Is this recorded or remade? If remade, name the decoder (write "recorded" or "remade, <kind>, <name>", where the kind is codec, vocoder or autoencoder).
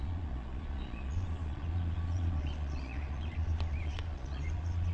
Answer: remade, vocoder, Vocos